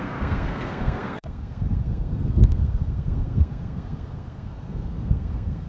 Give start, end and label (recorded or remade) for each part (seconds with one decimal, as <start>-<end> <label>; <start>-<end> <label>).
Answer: 0.0-5.7 remade